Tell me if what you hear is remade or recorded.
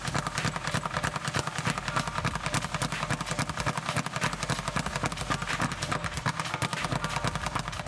recorded